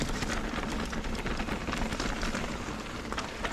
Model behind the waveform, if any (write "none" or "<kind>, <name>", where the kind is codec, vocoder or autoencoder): vocoder, BigVGAN v2